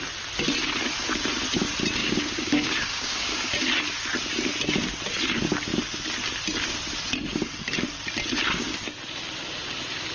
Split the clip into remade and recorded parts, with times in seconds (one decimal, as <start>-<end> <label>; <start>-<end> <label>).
0.0-2.0 recorded; 2.0-3.5 remade; 3.5-10.1 recorded